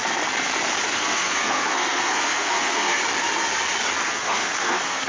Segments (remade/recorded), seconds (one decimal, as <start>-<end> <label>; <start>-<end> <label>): 0.0-0.8 recorded; 0.8-3.0 remade; 3.0-4.1 recorded; 4.1-5.1 remade

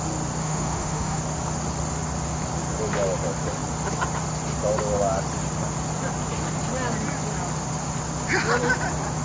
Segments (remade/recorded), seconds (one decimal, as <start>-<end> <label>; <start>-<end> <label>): 0.0-0.4 recorded; 0.4-1.2 remade; 1.2-9.2 recorded

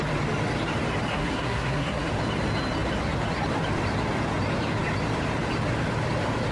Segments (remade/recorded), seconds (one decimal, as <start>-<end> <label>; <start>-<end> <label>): 0.0-1.1 recorded; 1.1-2.1 remade; 2.1-6.5 recorded

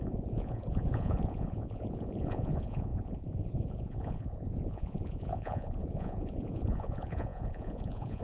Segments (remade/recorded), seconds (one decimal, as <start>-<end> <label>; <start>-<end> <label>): 0.0-8.2 remade

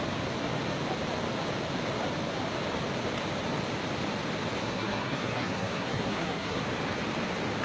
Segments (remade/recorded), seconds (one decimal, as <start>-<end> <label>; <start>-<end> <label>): 0.0-4.6 recorded; 4.6-6.6 remade; 6.6-7.6 recorded

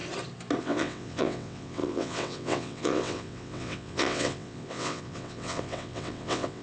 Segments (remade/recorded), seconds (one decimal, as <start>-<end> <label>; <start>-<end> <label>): 0.0-0.6 recorded; 0.6-6.6 remade

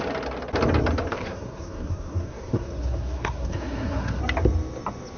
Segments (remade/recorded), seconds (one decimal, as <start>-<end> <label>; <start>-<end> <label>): 0.0-1.1 recorded; 1.1-4.2 remade; 4.2-5.2 recorded